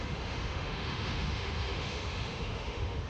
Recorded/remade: remade